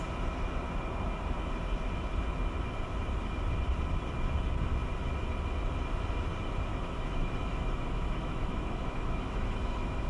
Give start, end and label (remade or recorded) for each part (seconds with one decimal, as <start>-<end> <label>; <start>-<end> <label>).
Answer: 0.0-6.7 recorded; 6.7-10.1 remade